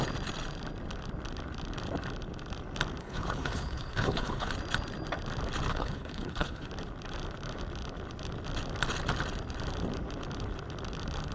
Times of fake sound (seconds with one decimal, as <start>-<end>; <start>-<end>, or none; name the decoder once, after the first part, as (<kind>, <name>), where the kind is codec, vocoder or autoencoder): 3.0-4.5 (codec, HILCodec); 5.7-6.7